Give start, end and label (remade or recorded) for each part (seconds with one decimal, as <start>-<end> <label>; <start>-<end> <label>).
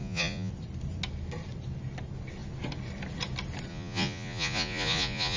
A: 0.0-0.5 remade; 0.5-3.7 recorded; 3.7-5.4 remade